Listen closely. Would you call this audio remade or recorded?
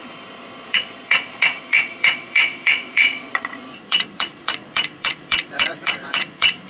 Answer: remade